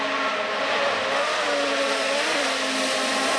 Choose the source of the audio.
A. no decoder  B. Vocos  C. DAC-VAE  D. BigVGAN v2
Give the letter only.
A